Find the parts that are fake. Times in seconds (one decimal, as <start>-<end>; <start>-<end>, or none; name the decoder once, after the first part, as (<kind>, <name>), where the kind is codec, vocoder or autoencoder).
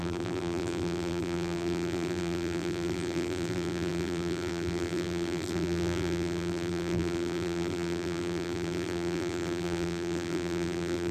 0.0-11.1 (vocoder, BigVGAN v2)